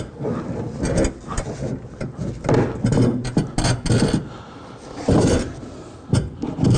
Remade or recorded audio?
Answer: recorded